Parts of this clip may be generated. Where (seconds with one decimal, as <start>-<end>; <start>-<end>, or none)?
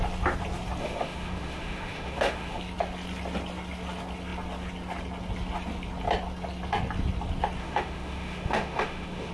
0.8-2.6; 7.6-9.3